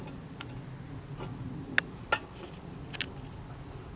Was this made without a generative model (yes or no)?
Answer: yes